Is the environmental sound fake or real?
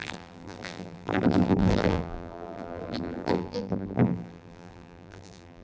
fake